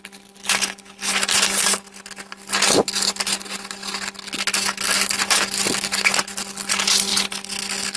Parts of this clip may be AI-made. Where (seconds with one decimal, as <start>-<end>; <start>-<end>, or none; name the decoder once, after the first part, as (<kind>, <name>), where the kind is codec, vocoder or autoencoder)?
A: none